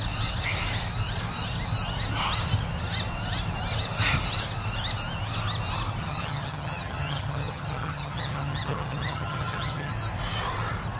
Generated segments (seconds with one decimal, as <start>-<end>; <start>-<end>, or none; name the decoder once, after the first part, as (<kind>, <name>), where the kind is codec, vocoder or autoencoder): 6.0-9.9 (vocoder, HiFi-GAN)